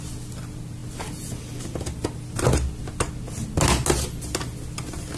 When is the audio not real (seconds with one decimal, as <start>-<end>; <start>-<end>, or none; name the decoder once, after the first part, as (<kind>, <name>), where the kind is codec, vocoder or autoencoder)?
none